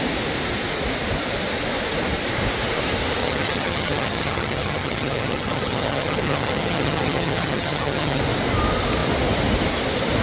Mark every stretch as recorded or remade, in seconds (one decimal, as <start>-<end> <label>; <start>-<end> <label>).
0.0-3.2 recorded; 3.2-8.2 remade; 8.2-10.2 recorded